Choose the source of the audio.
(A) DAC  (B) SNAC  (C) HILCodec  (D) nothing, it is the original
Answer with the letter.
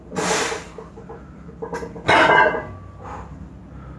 D